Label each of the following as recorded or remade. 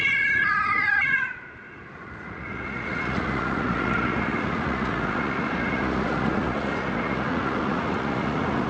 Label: remade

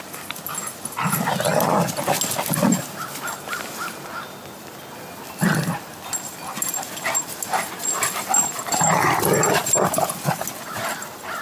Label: recorded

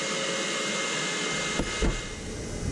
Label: recorded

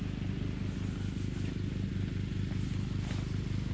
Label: recorded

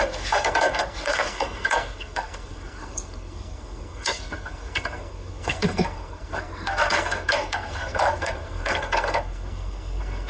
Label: remade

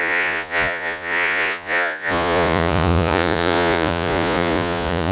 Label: remade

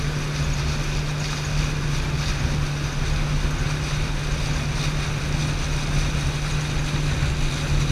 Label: recorded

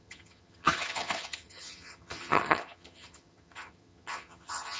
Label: remade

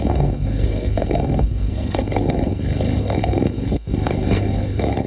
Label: remade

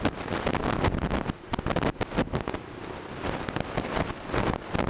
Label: recorded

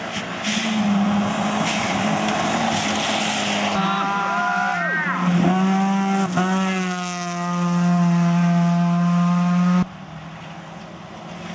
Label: recorded